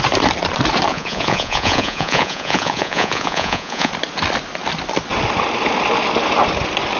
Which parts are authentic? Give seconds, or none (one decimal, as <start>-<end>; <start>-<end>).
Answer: 0.0-0.9; 3.9-7.0